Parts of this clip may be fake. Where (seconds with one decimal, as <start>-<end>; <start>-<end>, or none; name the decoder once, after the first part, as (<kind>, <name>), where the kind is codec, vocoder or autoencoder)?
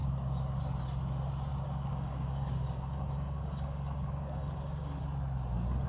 0.0-0.6 (codec, DAC); 1.5-5.0